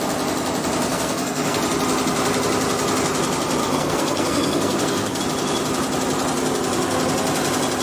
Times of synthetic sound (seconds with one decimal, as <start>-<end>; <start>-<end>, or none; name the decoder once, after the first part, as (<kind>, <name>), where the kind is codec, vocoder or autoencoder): 0.9-1.6 (codec, SNAC); 3.6-5.2